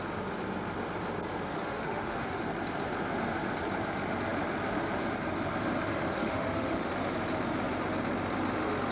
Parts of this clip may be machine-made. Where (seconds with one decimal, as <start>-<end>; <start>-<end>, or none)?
1.5-2.4; 5.9-6.9